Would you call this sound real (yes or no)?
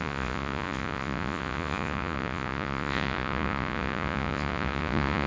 no